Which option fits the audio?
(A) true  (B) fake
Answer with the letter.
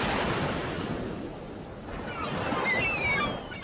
A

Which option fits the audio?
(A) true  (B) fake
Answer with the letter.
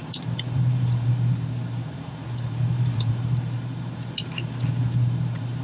B